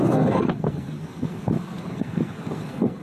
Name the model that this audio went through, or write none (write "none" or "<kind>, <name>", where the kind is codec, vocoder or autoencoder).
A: codec, SNAC